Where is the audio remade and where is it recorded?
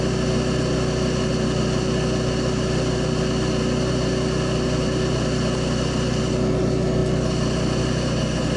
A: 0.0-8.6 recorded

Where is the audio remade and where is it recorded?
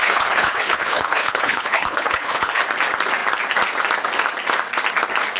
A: 0.0-2.6 remade; 2.6-5.4 recorded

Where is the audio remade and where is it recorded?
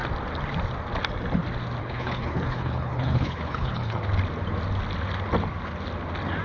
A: 0.0-1.8 recorded; 1.8-4.0 remade; 4.0-6.4 recorded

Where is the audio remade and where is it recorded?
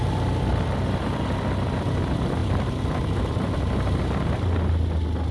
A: 0.0-5.3 recorded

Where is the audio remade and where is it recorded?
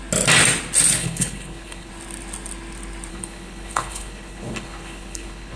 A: 0.0-1.0 recorded; 1.0-1.9 remade; 1.9-3.1 recorded; 3.1-5.6 remade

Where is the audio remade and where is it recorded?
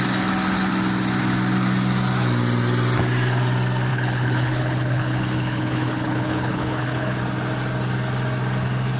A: 0.0-3.9 recorded; 3.9-7.2 remade; 7.2-9.0 recorded